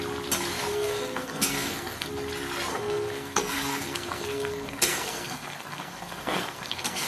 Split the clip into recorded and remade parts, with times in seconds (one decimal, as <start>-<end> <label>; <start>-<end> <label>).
0.0-0.7 recorded; 0.7-2.1 remade; 2.1-2.7 recorded; 2.7-7.1 remade